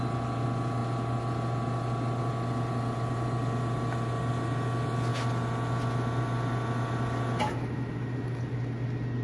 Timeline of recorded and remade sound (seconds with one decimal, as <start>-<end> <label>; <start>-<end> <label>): 0.0-9.2 recorded